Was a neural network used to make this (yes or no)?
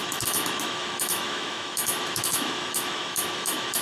yes